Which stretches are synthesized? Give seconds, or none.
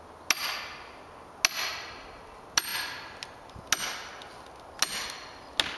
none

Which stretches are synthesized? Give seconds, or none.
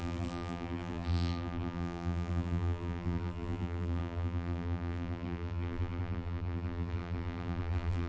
0.0-8.1 (vocoder, BigVGAN v2)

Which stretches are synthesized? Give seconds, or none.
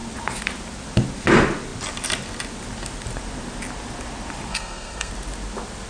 4.5-5.1 (codec, SNAC)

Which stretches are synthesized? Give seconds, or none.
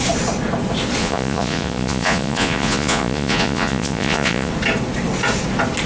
1.0-4.5 (vocoder, Vocos)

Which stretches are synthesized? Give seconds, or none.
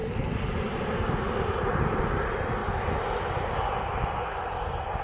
none